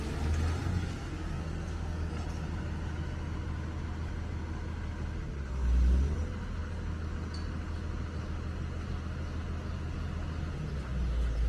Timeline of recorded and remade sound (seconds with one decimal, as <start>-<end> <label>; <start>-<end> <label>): 0.0-0.6 recorded; 0.6-2.1 remade; 2.1-11.5 recorded